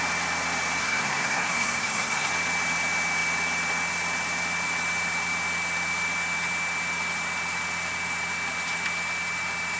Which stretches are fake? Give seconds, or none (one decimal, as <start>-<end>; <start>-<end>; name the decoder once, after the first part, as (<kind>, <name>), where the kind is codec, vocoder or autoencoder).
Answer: 0.8-2.3 (codec, SNAC)